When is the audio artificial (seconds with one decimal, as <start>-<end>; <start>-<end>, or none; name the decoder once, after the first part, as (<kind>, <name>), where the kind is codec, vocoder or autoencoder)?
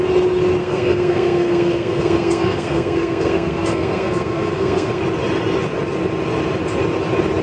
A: 0.6-5.0 (codec, SNAC)